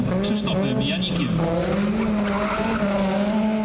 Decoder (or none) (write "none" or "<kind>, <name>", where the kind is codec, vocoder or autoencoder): none